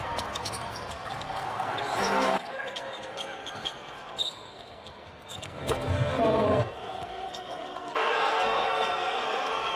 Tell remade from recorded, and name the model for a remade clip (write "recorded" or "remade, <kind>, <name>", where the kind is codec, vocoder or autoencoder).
remade, codec, SNAC